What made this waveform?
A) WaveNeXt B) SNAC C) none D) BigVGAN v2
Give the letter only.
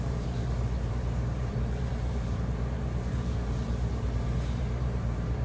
D